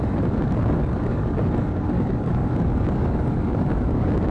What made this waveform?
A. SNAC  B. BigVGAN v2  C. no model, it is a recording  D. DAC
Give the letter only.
D